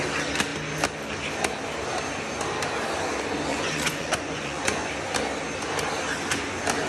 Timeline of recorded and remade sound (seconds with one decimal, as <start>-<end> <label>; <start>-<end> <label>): 0.0-3.5 recorded; 3.5-4.9 remade; 4.9-6.9 recorded